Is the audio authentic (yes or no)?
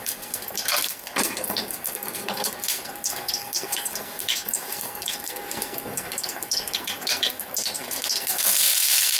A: no